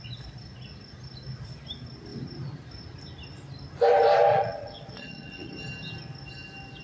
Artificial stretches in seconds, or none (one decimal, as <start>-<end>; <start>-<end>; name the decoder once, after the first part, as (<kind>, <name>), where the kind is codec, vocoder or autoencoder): 4.3-5.5 (vocoder, Vocos)